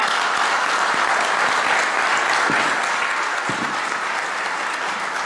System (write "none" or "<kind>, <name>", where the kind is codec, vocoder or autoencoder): none